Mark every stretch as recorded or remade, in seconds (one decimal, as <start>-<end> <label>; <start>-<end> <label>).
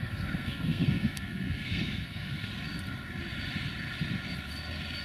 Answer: 0.0-2.5 remade; 2.5-5.0 recorded